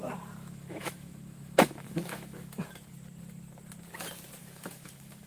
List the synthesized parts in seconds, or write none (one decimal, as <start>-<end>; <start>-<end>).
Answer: 0.4-2.7; 4.4-5.3